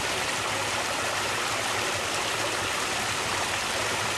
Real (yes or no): yes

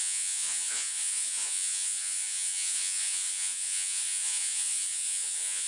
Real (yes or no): no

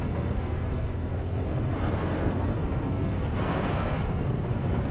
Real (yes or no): no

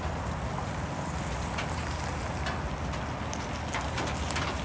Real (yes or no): yes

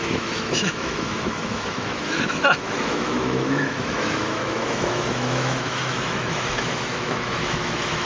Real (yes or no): no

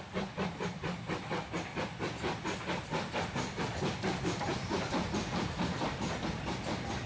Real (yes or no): yes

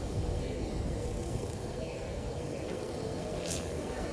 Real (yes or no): no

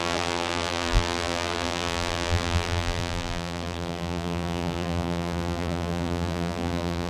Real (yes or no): no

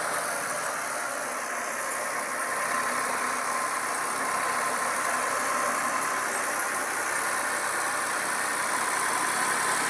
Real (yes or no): yes